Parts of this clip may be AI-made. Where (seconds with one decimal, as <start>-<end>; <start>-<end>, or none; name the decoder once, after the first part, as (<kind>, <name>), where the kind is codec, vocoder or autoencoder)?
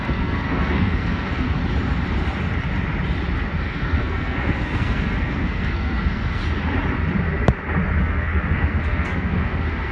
0.0-1.6 (codec, SNAC); 3.6-6.4; 8.0-9.9